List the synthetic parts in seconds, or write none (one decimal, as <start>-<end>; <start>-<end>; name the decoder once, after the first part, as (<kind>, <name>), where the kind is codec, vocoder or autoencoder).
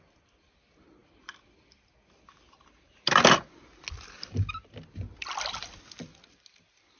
none